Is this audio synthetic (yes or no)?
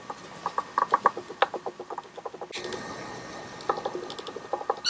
no